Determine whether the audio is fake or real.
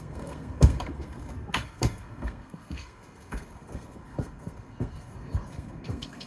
fake